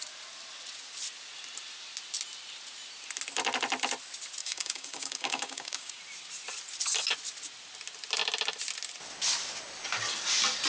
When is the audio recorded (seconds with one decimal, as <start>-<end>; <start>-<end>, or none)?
0.0-4.4; 6.0-10.7